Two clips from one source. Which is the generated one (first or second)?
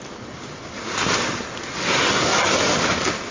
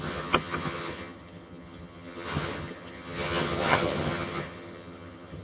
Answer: second